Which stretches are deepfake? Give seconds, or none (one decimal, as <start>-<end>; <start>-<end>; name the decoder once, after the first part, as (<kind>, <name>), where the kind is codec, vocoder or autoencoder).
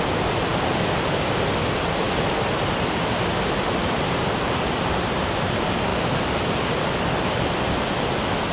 none